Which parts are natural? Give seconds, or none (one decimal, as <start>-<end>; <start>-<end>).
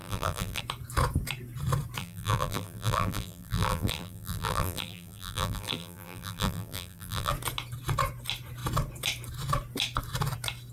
0.6-2.0; 7.3-10.7